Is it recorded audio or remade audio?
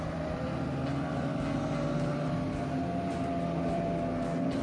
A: recorded